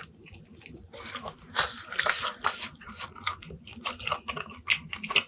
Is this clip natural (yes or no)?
yes